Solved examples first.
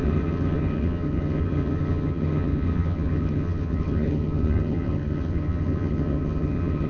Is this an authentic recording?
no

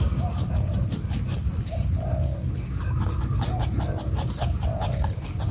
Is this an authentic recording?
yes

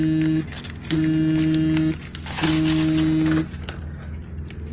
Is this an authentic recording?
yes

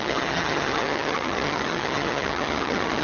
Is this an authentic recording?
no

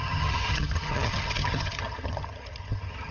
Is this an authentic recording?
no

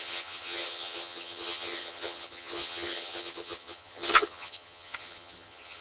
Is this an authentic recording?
no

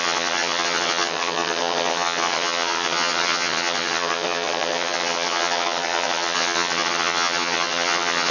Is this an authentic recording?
no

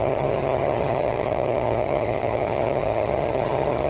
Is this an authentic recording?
no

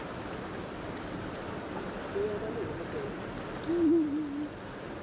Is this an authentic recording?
yes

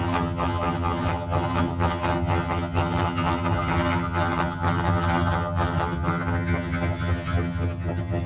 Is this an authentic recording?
no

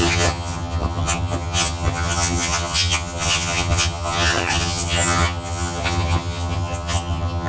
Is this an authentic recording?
no